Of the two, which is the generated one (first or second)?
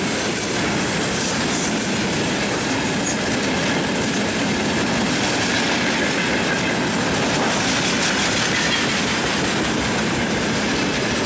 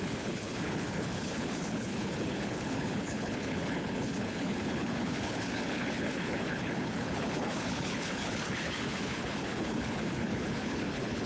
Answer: second